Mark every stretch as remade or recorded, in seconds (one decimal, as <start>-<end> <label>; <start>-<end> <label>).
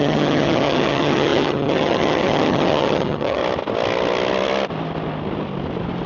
0.0-3.4 remade; 3.4-6.1 recorded